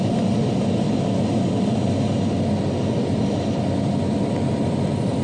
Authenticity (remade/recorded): recorded